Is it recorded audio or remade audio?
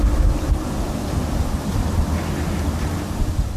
recorded